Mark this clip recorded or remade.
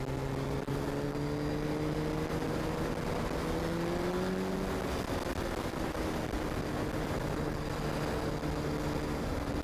recorded